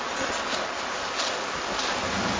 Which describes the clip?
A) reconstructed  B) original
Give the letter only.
B